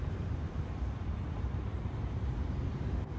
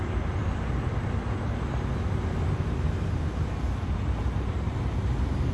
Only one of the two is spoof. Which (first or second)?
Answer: first